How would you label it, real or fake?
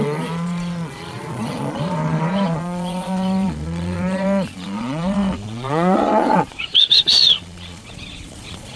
fake